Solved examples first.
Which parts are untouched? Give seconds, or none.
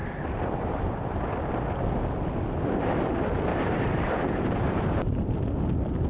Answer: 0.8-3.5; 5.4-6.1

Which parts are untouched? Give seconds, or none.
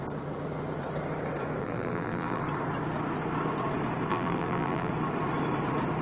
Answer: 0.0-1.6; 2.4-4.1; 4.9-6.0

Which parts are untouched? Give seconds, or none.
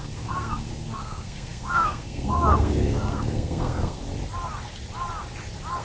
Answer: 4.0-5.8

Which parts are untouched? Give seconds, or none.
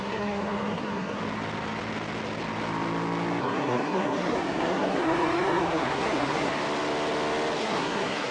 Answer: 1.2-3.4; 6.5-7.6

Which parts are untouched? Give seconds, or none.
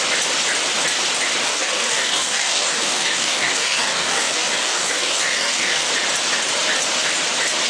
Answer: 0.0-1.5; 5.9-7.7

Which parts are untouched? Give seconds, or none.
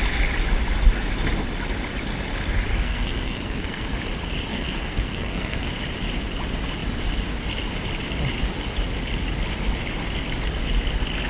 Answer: 0.0-2.7; 4.0-4.5; 5.7-11.3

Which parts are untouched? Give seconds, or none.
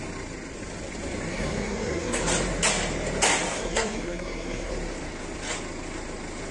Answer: 0.0-1.3; 2.2-3.5; 4.7-6.5